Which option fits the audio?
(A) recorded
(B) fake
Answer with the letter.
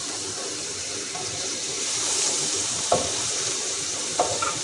B